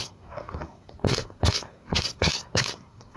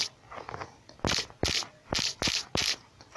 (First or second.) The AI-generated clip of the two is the first